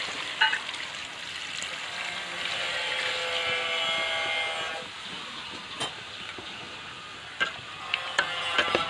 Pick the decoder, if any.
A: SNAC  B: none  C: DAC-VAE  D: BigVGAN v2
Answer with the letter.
B